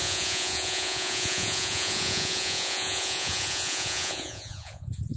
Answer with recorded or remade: remade